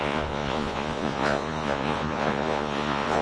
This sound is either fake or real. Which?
fake